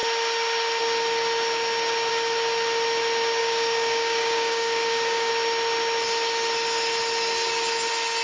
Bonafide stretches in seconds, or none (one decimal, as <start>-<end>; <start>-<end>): 0.0-3.4; 5.3-8.2